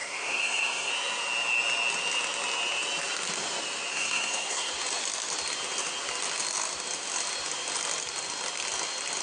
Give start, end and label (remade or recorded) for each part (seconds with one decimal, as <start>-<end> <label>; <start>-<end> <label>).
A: 0.0-0.9 remade; 0.9-3.9 recorded; 3.9-4.7 remade; 4.7-9.2 recorded